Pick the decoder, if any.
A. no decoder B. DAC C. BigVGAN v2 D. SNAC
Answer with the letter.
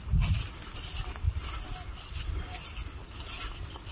A